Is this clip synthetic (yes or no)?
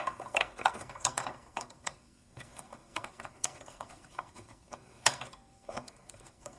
yes